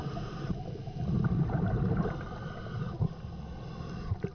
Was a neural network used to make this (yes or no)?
no